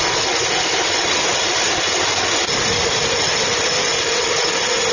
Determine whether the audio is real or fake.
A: real